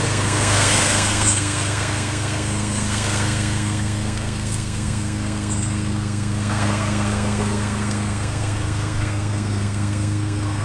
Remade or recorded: remade